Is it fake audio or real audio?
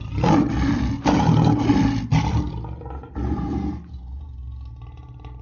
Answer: real